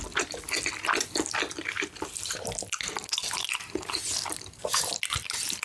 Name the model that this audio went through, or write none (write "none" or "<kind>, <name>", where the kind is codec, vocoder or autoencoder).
none